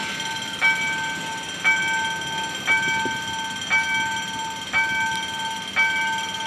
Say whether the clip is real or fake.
real